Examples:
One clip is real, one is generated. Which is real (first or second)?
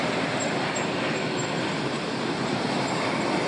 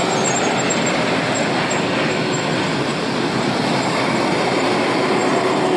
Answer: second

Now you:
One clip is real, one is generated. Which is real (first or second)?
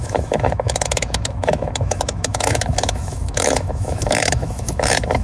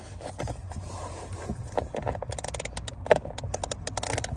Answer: second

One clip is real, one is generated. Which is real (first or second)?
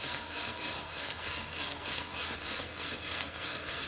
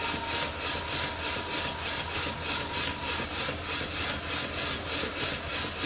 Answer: second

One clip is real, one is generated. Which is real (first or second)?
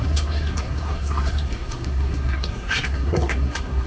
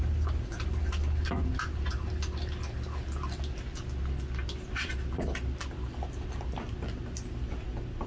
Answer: second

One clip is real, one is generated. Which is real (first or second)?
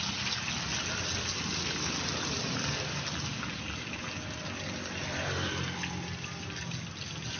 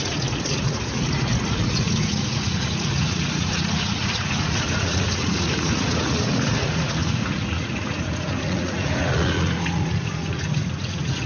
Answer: first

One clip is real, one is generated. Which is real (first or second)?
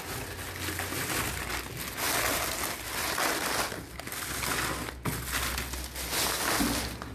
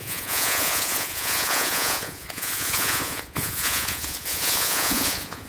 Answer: first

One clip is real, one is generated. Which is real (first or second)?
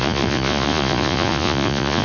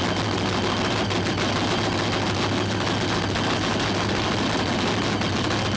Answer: second